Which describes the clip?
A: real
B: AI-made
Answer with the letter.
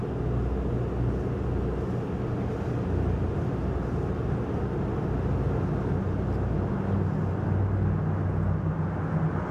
A